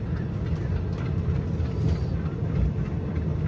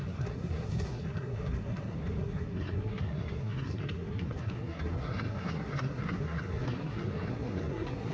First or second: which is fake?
second